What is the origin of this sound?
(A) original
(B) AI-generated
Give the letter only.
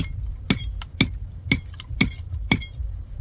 A